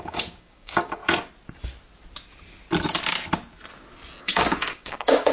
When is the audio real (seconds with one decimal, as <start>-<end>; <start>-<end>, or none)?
1.0-4.2